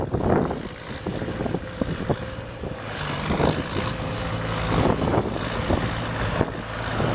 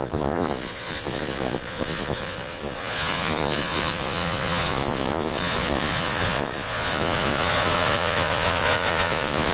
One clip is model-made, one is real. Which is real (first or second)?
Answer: first